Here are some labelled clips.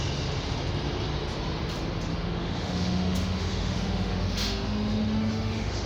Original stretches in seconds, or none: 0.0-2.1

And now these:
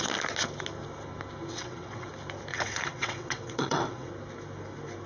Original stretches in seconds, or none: 0.0-1.5; 2.1-2.5; 4.1-5.1

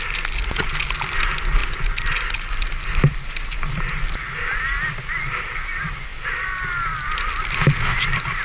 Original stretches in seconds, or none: 0.0-1.6; 3.9-6.1; 8.0-8.4

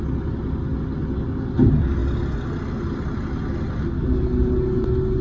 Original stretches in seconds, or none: 0.0-5.2

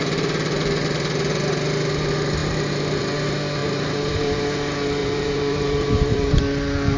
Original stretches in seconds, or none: 0.0-2.4; 3.0-3.6; 4.4-5.0; 6.4-7.0

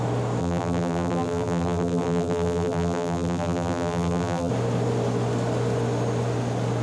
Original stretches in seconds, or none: 0.0-0.4; 4.5-6.8

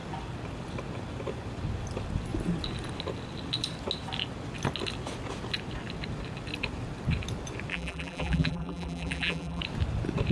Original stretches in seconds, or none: 0.0-7.7; 9.6-10.3